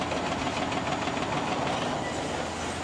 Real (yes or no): yes